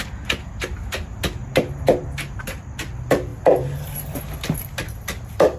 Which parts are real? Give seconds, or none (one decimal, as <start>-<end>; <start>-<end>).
0.0-3.3; 4.2-5.6